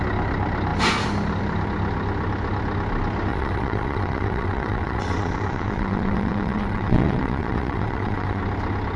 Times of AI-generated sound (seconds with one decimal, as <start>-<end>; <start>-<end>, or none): 3.3-8.4